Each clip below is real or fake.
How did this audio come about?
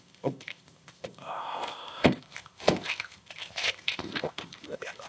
fake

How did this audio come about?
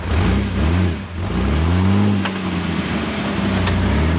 real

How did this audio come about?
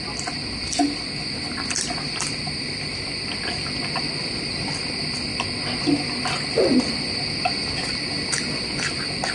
real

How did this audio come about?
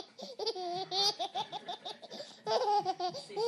real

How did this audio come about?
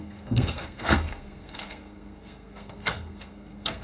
fake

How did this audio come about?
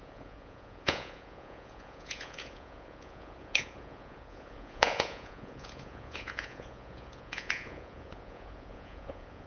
fake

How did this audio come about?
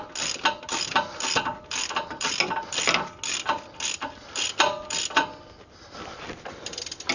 real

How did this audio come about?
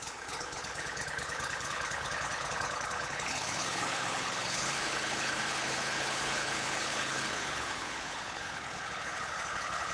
fake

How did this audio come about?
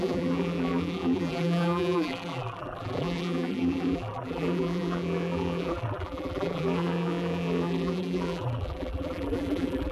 fake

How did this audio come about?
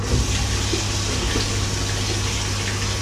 real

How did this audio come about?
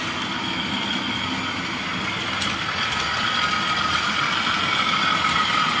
real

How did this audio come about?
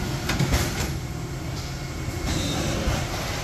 real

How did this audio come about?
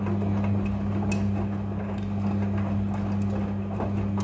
real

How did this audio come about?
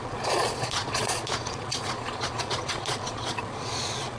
fake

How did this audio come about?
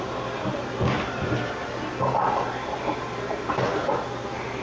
real